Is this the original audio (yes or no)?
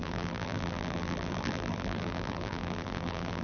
no